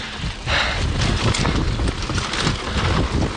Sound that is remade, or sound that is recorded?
recorded